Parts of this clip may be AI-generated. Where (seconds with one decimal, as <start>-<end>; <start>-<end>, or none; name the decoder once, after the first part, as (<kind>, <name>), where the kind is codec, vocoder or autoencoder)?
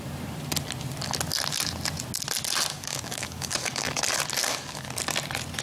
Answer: 2.7-4.0 (codec, DAC); 4.4-4.9